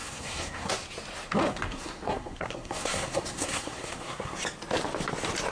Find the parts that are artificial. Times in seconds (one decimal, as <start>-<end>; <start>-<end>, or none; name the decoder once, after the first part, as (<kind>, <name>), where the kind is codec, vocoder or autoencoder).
0.0-0.7 (codec, SNAC); 1.5-4.4